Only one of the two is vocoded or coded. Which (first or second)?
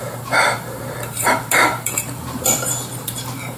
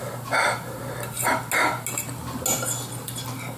first